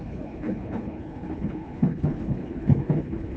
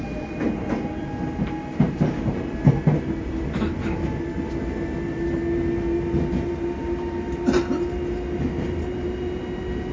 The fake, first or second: first